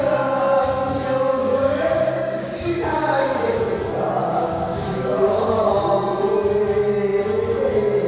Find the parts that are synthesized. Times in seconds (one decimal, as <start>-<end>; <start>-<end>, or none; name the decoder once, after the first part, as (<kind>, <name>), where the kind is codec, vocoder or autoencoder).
1.4-3.6 (codec, DAC); 4.2-5.7